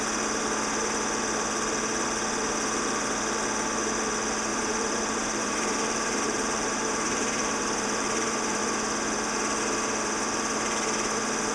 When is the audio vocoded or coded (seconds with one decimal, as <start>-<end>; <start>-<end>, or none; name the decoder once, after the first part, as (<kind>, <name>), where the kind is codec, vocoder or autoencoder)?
4.5-8.6 (vocoder, BigVGAN v2)